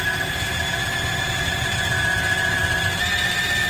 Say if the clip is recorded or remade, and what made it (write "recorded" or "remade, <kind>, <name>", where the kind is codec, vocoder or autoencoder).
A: recorded